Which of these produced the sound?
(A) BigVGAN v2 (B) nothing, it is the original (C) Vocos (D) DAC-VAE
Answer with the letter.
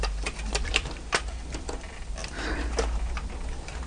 A